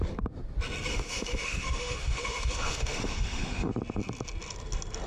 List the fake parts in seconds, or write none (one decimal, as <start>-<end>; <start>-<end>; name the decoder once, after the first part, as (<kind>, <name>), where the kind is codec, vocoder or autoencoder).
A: 0.9-3.7 (autoencoder, DAC-VAE)